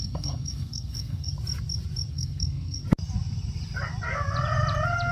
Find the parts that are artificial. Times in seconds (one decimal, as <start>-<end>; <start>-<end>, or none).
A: 0.0-1.3; 2.1-2.8